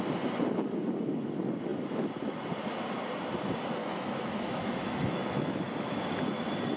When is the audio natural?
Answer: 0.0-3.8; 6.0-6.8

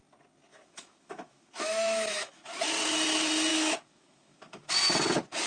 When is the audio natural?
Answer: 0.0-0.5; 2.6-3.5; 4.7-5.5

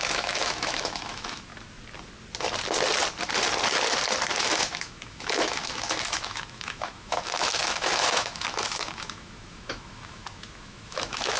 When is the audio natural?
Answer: 1.5-4.4

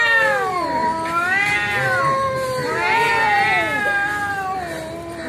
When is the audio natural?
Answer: 0.0-5.3

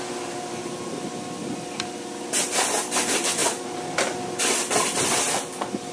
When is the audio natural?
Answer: 0.0-5.9

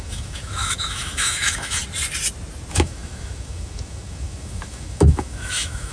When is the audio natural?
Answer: 1.8-2.7

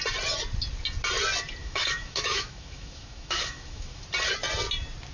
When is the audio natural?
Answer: 0.0-1.6; 4.0-5.1

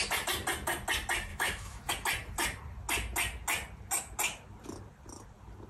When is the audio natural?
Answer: 0.0-1.3; 1.9-5.7